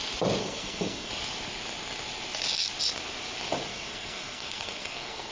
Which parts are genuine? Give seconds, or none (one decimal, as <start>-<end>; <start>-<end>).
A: 0.0-0.4; 1.1-3.7